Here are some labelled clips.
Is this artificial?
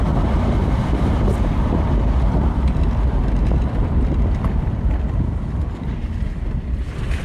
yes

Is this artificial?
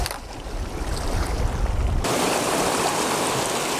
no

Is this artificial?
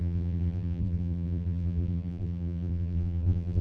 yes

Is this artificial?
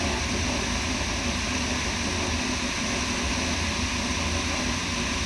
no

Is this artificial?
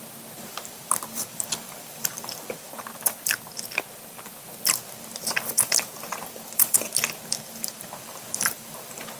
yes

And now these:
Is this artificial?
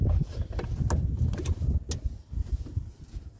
no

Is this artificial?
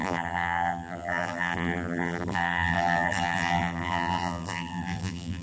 yes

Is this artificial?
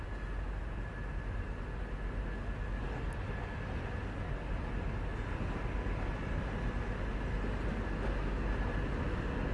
no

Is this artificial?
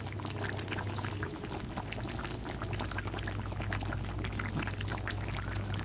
no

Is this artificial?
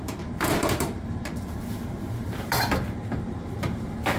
yes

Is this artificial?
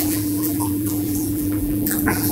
yes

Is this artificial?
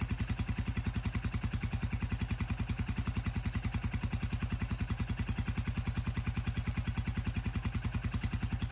no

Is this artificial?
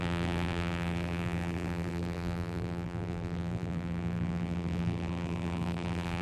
yes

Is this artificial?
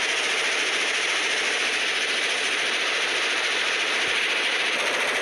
yes